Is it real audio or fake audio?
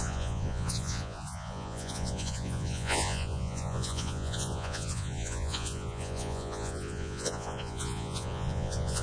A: fake